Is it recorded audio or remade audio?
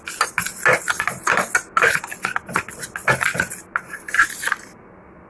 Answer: recorded